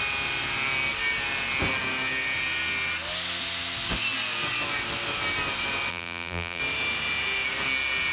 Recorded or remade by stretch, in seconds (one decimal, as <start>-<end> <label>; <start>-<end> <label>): 0.0-5.9 recorded; 5.9-6.6 remade; 6.6-8.1 recorded